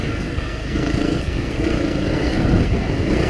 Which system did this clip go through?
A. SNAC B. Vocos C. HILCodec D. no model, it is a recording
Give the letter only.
A